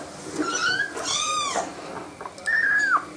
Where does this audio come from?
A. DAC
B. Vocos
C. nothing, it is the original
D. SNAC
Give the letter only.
C